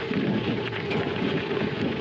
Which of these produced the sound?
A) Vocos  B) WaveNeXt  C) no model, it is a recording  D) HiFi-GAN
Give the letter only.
A